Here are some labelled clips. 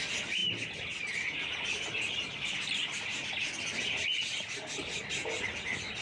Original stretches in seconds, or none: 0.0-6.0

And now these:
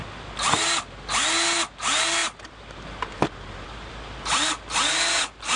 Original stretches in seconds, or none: 0.0-5.6

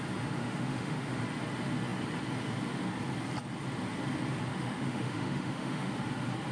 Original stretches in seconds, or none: 0.0-0.4; 1.2-4.5; 5.9-6.5